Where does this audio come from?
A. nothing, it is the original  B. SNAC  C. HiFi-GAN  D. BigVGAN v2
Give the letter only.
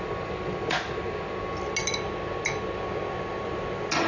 A